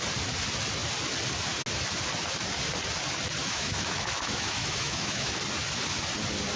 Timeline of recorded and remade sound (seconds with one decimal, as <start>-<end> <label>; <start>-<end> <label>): 0.0-3.4 recorded; 3.4-5.4 remade; 5.4-6.6 recorded